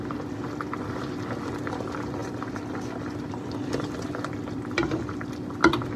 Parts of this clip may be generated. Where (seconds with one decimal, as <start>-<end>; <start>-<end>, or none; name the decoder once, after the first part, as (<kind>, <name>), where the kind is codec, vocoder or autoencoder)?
none

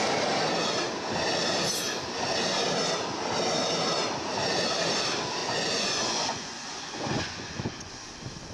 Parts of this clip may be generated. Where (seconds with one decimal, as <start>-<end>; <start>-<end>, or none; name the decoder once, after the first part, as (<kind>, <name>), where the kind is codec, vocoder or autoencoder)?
5.4-8.1 (vocoder, Vocos)